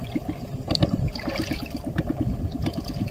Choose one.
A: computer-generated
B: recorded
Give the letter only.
B